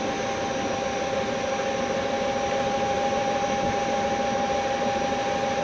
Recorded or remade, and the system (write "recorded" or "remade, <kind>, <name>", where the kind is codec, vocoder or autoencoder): recorded